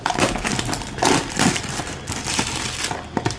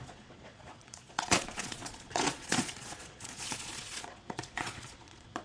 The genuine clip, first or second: first